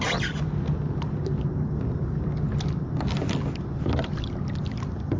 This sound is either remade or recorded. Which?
recorded